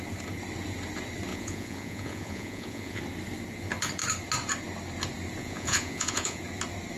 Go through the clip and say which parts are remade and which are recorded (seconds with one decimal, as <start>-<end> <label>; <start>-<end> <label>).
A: 0.0-1.3 recorded; 1.3-3.0 remade; 3.0-5.4 recorded; 5.4-6.4 remade; 6.4-7.0 recorded